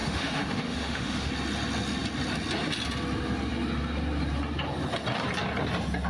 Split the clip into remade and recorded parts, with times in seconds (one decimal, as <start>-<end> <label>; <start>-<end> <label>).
0.0-1.3 remade; 1.3-6.1 recorded